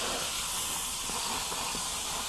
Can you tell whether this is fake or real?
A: real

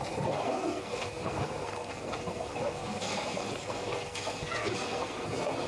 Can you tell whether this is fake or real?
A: fake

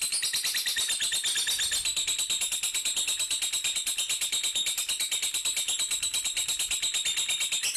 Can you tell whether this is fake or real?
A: real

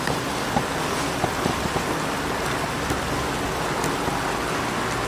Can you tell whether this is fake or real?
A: real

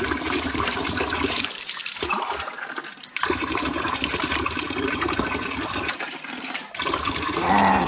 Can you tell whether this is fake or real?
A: fake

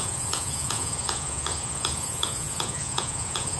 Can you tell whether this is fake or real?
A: fake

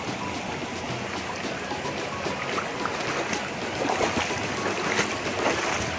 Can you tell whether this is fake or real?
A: real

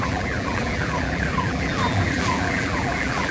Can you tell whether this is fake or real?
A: fake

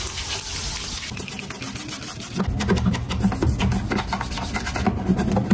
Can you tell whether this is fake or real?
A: real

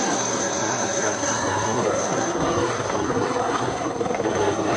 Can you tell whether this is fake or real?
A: fake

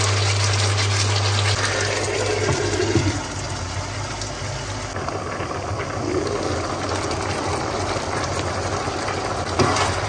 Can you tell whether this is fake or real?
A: real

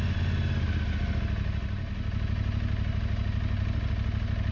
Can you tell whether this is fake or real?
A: real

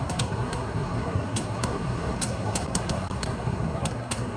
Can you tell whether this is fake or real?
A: fake